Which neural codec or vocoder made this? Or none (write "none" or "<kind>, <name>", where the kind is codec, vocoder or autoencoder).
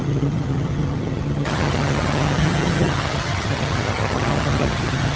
vocoder, HiFi-GAN